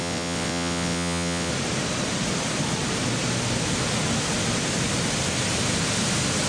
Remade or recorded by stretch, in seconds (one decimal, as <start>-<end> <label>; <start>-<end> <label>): 0.0-1.5 remade; 1.5-6.5 recorded